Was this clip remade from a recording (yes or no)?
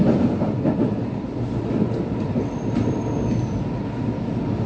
no